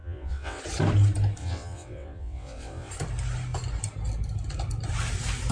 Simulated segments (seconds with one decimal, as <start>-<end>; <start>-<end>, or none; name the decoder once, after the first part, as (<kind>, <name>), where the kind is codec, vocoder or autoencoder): 0.0-0.6 (vocoder, WaveNeXt); 1.4-2.9